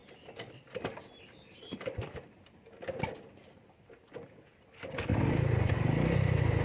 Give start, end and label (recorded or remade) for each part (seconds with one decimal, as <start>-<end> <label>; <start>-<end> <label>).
0.0-5.1 recorded; 5.1-5.7 remade; 5.7-6.6 recorded